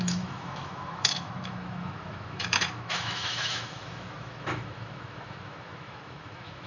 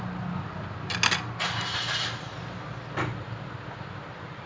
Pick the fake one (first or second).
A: first